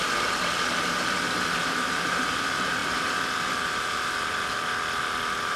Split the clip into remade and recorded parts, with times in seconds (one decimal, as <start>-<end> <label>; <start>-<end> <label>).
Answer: 0.0-5.6 recorded